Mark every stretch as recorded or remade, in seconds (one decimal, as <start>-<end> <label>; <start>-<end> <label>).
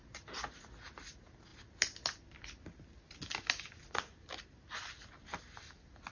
0.0-6.1 recorded